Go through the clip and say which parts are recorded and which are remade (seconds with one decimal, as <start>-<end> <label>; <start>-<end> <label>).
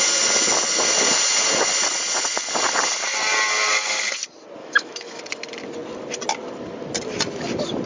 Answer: 0.0-4.6 recorded; 4.6-5.2 remade; 5.2-7.9 recorded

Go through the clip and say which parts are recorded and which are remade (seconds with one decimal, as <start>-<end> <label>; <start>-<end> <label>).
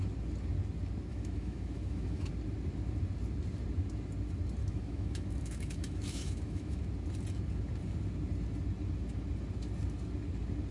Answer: 0.0-1.1 recorded; 1.1-2.3 remade; 2.3-4.6 recorded; 4.6-6.8 remade; 6.8-10.7 recorded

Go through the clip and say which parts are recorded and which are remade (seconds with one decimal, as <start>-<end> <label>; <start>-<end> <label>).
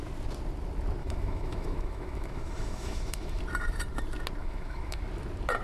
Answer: 0.0-1.0 recorded; 1.0-3.4 remade; 3.4-4.4 recorded; 4.4-5.0 remade; 5.0-5.6 recorded